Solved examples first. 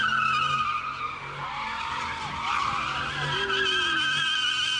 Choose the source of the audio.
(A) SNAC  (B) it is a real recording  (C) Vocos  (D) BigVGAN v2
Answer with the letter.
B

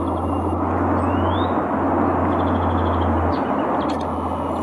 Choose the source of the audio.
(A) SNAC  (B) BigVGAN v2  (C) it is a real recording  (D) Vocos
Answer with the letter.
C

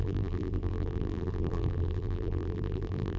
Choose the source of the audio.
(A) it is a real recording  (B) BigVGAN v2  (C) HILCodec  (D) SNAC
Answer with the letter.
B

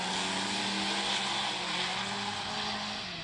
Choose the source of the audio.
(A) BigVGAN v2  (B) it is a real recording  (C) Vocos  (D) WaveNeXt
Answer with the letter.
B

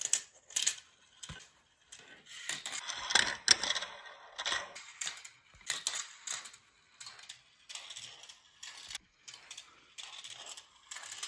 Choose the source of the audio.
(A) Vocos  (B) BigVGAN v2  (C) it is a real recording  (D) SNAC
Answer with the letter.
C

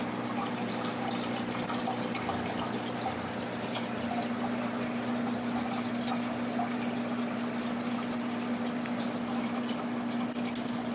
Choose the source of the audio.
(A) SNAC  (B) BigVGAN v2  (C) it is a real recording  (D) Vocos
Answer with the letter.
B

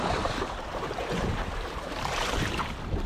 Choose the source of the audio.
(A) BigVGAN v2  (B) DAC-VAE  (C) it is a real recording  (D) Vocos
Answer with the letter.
A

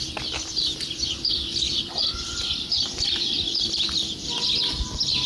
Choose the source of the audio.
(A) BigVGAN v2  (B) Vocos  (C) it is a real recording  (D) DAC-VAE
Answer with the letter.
A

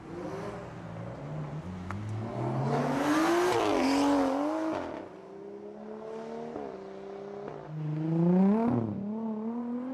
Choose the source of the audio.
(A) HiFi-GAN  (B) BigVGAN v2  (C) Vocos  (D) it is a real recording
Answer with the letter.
D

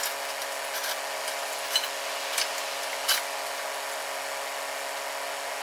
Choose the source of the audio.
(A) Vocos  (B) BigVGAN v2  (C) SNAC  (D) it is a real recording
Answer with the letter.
D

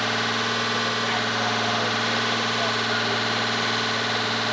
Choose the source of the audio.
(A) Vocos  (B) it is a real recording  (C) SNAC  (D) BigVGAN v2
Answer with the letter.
B